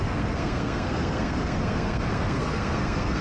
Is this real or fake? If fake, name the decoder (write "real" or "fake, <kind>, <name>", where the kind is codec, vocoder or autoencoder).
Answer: fake, codec, SNAC